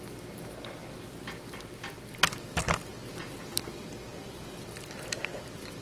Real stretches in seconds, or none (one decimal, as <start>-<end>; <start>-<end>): 0.0-2.9; 3.4-4.1

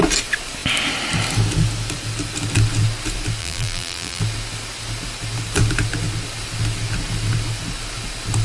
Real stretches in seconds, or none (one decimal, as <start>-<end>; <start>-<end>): 0.0-3.4; 4.2-8.4

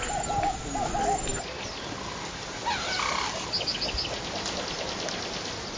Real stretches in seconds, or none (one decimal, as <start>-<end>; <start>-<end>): none

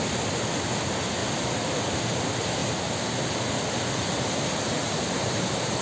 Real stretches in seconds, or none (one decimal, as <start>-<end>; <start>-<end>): 0.0-4.8

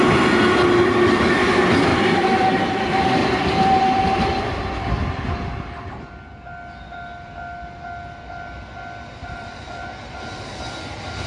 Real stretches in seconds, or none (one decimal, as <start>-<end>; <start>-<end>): 0.0-1.9; 2.5-3.2; 4.0-9.2; 9.9-11.3

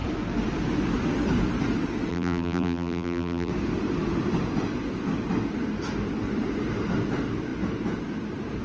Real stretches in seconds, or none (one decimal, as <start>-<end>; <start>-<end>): 0.0-2.1; 3.5-8.6

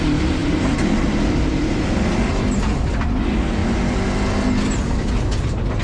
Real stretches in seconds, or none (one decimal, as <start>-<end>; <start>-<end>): 3.6-5.1